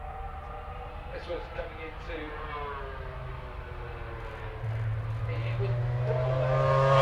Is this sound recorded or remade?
recorded